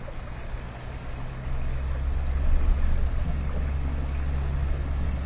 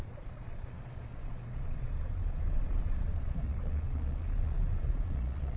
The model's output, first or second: second